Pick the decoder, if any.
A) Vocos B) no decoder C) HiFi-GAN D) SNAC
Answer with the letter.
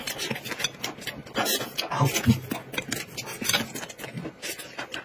B